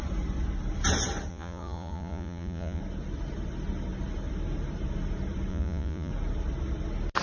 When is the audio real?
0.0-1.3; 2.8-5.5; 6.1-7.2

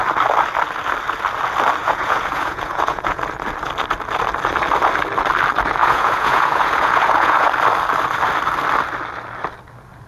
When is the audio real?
0.0-1.8; 3.2-5.8; 7.5-10.1